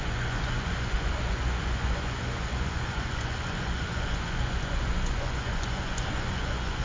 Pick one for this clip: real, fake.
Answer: fake